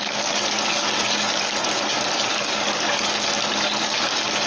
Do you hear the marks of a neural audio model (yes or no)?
yes